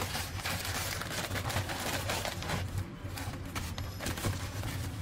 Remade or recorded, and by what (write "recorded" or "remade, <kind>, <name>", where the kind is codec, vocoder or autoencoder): remade, vocoder, BigVGAN v2